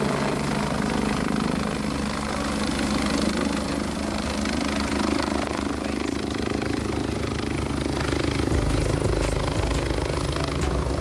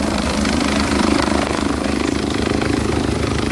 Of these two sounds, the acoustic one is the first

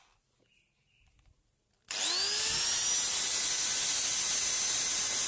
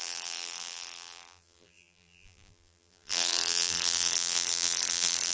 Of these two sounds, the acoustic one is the first